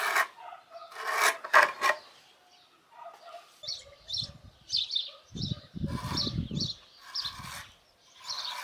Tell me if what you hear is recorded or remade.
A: recorded